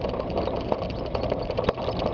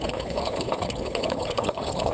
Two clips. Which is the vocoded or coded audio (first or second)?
second